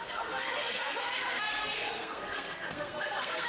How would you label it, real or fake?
fake